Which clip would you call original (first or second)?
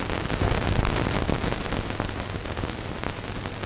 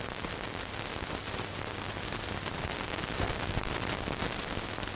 first